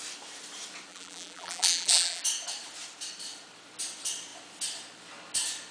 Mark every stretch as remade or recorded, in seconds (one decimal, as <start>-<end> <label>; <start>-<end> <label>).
0.0-0.9 recorded; 0.9-2.2 remade; 2.2-5.7 recorded